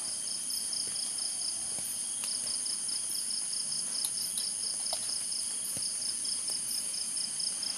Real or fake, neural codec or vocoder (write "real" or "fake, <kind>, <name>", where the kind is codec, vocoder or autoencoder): real